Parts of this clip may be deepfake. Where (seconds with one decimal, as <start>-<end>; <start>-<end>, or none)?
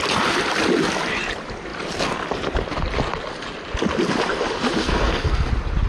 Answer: 4.8-5.5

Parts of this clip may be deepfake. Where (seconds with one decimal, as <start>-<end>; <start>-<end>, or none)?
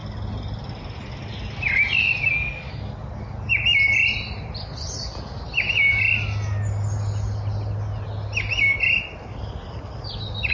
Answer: none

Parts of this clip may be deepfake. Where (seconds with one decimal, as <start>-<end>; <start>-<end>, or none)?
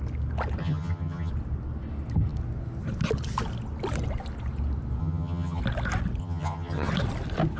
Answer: 0.6-1.3; 5.0-5.6; 6.2-6.9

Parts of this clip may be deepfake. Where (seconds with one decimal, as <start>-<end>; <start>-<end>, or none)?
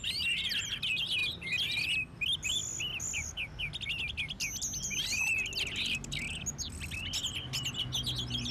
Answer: none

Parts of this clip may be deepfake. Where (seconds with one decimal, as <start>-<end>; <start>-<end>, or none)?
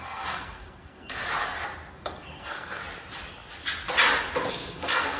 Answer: 0.0-1.2; 1.9-2.8; 4.5-5.2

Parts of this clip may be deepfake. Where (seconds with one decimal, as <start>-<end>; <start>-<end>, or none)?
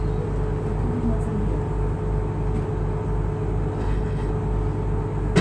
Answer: 3.8-4.3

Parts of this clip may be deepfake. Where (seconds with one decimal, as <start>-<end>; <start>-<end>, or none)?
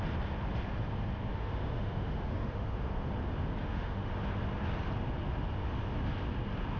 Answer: 1.3-2.9; 3.6-4.1